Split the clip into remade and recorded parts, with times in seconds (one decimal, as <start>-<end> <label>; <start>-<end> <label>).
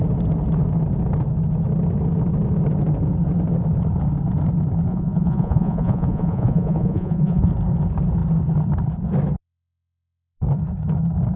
0.0-4.9 recorded; 4.9-7.5 remade; 7.5-11.4 recorded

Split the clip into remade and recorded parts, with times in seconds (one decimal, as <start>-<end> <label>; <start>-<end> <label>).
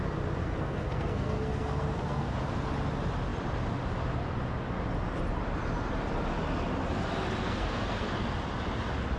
0.0-0.4 recorded; 0.4-2.3 remade; 2.3-7.4 recorded; 7.4-8.1 remade; 8.1-9.2 recorded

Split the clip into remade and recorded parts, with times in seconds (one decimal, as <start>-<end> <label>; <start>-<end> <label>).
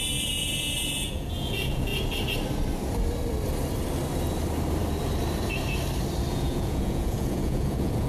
0.0-1.9 remade; 1.9-6.3 recorded; 6.3-8.1 remade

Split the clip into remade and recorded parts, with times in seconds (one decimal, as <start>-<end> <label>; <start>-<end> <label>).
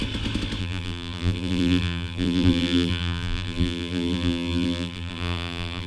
0.0-0.6 recorded; 0.6-5.9 remade